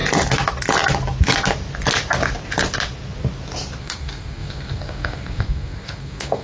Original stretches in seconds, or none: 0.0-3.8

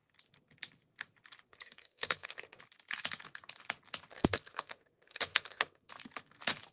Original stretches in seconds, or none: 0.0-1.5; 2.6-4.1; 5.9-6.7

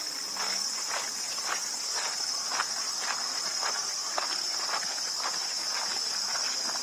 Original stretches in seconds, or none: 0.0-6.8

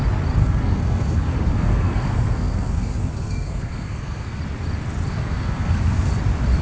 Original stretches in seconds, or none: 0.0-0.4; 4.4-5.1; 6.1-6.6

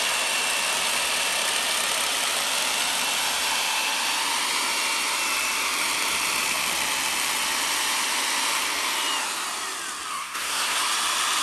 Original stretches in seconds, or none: 0.0-10.1; 10.8-11.4